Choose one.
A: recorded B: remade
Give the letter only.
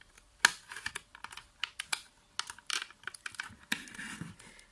A